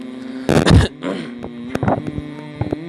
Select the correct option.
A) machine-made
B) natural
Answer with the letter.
B